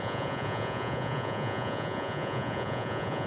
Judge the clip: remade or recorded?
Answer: remade